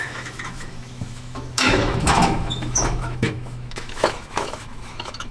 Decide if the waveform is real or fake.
fake